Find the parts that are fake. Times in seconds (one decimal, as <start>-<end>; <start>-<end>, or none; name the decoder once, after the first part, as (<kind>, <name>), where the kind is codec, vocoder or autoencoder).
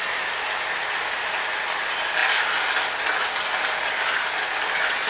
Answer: none